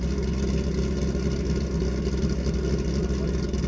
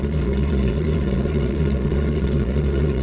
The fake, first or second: second